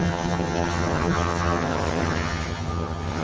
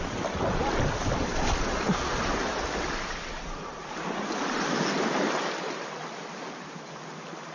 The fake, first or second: first